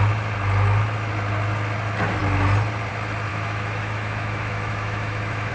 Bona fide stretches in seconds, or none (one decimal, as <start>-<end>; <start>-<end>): 0.0-3.3